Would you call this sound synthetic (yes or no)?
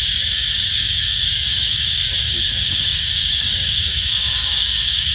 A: yes